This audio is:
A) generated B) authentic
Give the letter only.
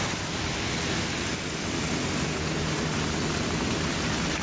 B